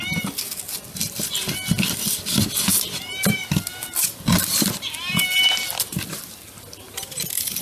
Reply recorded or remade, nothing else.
recorded